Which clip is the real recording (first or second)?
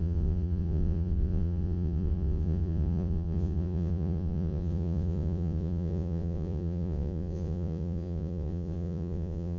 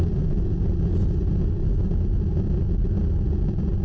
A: second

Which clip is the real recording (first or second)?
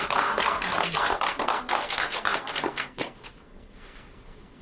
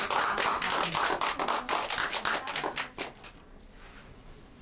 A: second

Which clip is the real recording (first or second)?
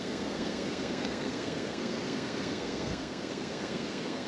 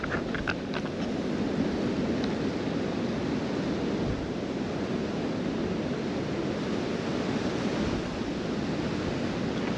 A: second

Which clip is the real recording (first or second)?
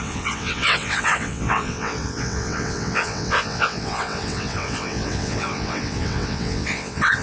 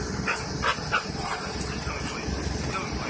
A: second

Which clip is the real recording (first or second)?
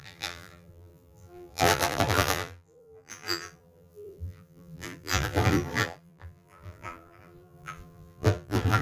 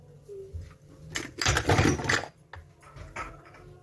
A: second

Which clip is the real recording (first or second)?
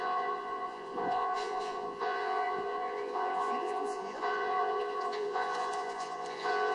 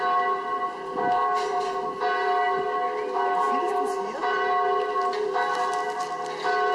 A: second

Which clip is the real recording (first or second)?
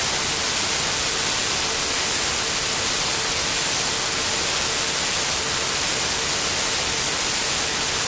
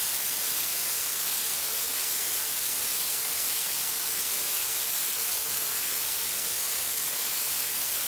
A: first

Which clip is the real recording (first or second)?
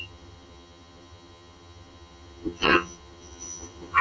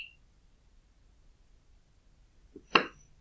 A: second